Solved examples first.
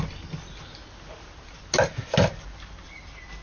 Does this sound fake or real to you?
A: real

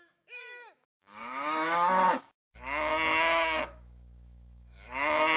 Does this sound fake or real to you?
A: fake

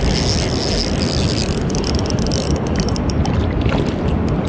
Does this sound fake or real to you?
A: real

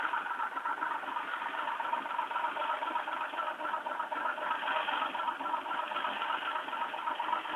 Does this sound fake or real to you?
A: real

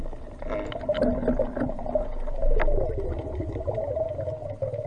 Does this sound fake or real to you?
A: real